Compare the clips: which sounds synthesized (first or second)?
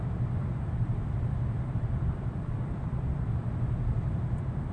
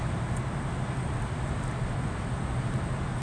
first